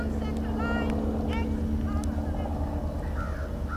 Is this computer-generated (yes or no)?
no